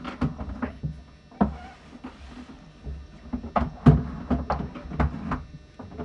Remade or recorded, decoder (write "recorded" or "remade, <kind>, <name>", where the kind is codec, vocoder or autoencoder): recorded